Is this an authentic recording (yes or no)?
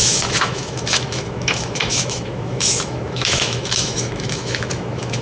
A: no